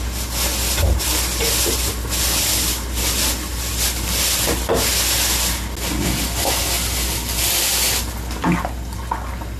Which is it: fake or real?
real